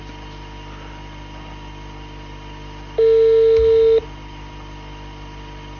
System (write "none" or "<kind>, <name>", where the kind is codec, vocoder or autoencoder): none